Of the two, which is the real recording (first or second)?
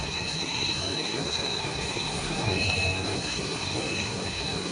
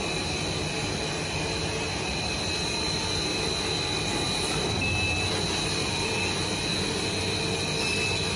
second